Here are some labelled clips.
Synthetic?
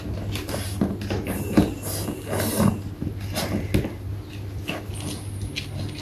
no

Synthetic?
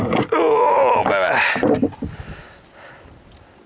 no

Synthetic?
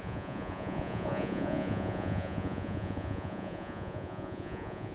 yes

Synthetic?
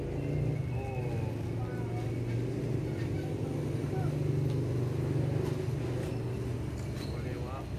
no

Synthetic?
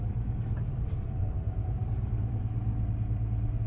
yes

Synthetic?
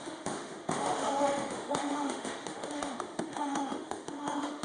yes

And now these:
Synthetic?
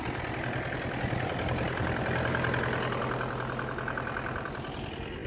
no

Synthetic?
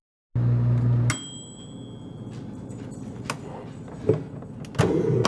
no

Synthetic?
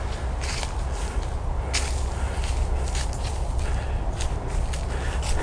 no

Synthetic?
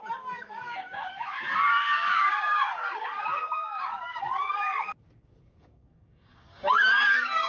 yes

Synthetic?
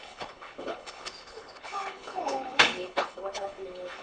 yes